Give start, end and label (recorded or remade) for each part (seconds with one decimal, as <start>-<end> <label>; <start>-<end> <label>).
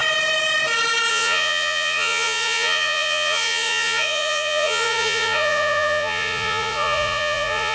0.0-1.1 recorded; 1.1-7.7 remade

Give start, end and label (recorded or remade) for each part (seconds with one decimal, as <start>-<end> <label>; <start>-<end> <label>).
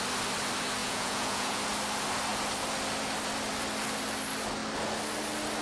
0.0-0.8 recorded; 0.8-1.6 remade; 1.6-5.6 recorded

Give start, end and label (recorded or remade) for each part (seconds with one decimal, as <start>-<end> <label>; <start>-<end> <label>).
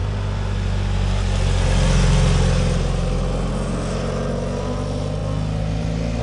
0.0-6.2 recorded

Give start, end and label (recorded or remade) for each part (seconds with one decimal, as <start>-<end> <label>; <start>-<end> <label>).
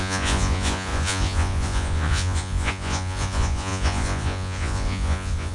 0.0-5.5 remade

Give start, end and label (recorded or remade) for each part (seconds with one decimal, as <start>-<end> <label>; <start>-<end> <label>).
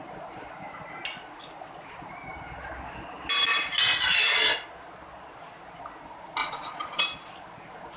0.0-6.4 recorded; 6.4-7.0 remade; 7.0-8.0 recorded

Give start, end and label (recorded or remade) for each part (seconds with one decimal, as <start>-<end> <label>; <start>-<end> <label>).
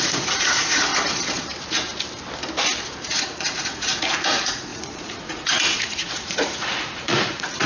0.0-0.9 remade; 0.9-3.2 recorded; 3.2-7.7 remade